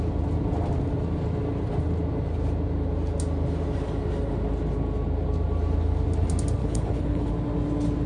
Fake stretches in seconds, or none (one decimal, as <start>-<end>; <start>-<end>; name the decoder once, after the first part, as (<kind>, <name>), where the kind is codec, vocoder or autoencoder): 6.6-7.3 (codec, HILCodec)